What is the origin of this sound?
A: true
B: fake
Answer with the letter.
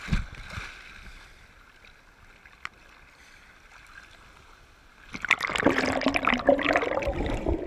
A